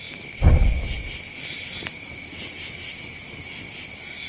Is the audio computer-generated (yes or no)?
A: no